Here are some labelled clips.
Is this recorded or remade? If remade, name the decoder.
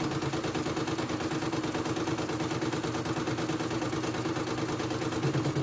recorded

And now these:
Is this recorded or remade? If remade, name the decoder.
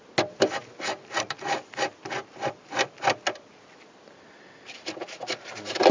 recorded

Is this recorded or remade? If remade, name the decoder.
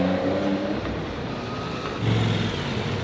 recorded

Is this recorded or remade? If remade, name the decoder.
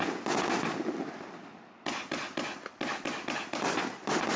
recorded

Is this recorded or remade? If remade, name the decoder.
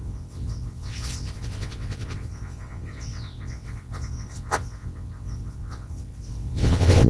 remade, vocoder, WaveNeXt